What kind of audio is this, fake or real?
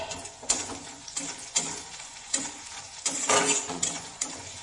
fake